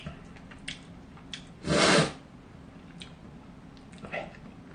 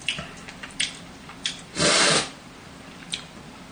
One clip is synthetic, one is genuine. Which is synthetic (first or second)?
second